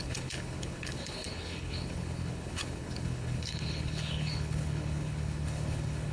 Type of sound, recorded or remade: remade